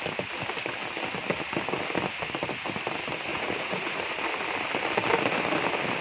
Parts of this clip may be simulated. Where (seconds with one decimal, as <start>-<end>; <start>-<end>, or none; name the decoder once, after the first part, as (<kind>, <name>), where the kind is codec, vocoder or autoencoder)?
3.3-4.0 (vocoder, Vocos)